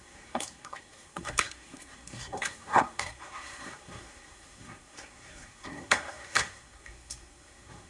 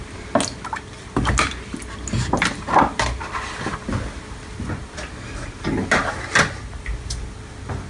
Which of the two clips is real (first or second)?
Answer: second